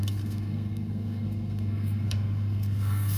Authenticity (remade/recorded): remade